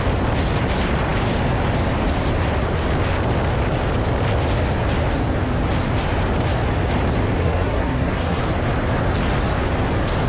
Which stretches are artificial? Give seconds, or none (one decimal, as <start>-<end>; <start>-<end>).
7.4-8.4